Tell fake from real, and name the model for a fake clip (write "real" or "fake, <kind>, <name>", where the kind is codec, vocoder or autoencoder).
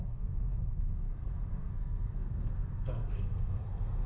fake, codec, SNAC